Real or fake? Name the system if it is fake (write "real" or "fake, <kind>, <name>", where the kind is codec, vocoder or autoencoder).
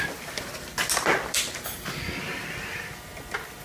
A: real